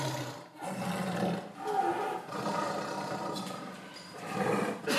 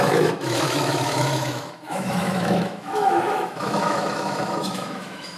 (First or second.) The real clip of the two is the first